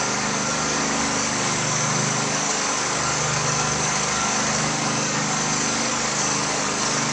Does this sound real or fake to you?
fake